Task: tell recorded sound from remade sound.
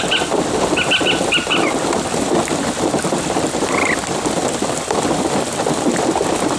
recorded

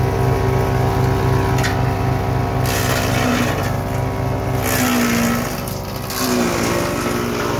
recorded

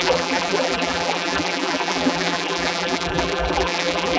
remade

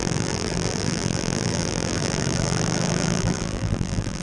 remade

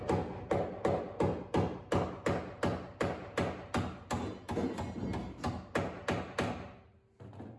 recorded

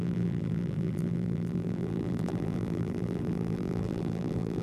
remade